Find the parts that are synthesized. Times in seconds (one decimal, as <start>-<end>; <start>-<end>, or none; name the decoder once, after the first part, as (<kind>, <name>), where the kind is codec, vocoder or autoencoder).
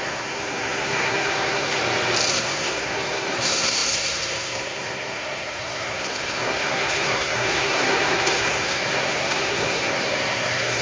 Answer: 0.0-1.8 (codec, SNAC); 2.3-10.8